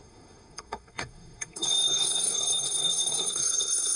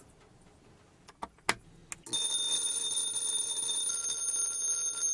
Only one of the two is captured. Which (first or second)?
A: second